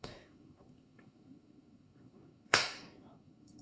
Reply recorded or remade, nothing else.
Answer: remade